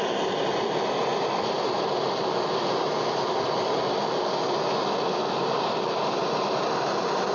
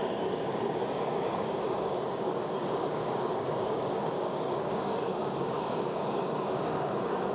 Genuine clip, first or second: first